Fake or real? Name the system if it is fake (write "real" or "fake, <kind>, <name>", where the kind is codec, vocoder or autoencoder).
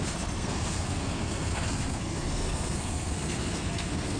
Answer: fake, codec, SNAC